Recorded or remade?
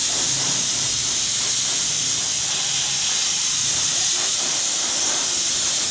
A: recorded